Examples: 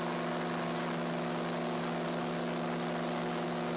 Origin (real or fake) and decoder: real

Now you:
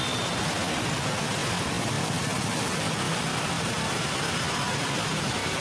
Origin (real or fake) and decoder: real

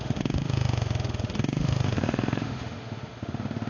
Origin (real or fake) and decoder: fake, autoencoder, DAC-VAE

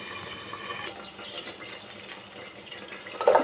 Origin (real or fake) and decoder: real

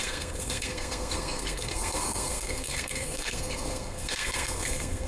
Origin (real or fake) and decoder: fake, codec, SNAC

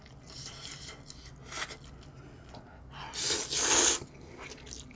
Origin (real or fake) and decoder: real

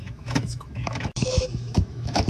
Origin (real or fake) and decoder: fake, autoencoder, DAC-VAE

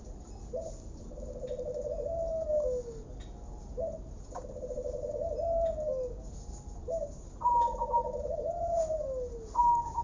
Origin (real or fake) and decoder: real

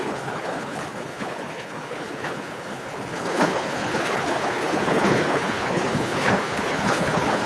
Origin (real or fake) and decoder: fake, codec, HILCodec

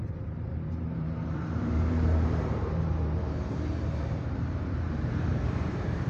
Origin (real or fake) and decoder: fake, vocoder, BigVGAN v2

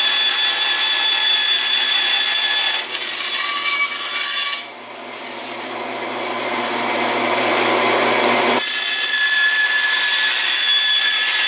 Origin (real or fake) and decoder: real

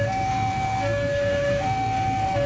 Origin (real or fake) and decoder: fake, codec, SNAC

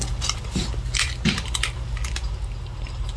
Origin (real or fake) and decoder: real